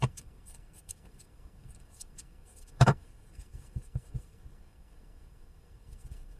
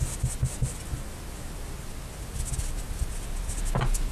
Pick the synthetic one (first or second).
first